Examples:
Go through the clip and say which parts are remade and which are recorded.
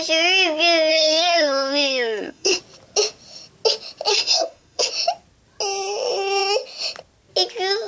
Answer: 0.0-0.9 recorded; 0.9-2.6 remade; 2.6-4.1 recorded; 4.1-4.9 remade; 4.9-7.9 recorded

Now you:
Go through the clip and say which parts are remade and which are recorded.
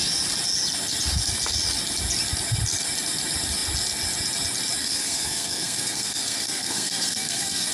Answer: 0.0-4.8 recorded; 4.8-7.7 remade